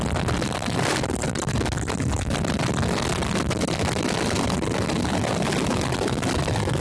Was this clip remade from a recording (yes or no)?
no